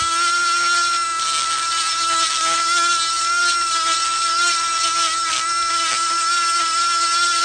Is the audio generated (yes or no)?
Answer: no